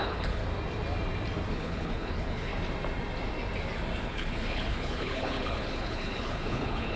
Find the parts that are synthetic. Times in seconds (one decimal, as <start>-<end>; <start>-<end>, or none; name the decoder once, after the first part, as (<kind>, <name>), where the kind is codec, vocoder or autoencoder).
0.0-0.4 (codec, HILCodec); 1.5-2.5; 4.0-7.0